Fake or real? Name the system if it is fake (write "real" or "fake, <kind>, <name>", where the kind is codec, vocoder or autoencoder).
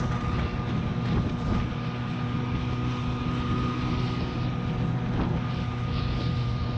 real